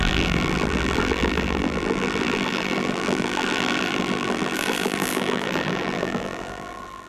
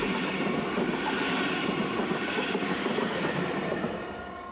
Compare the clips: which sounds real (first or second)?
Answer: second